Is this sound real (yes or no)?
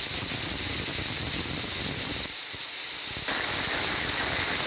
yes